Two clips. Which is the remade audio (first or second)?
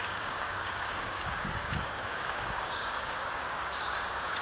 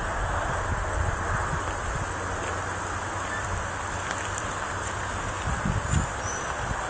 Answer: first